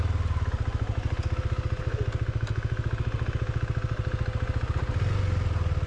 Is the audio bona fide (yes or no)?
yes